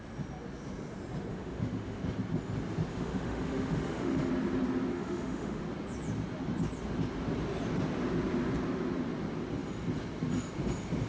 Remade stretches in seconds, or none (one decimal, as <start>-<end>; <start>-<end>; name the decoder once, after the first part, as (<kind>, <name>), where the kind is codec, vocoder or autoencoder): 1.3-2.0 (autoencoder, DAC-VAE); 2.9-4.3; 4.9-5.6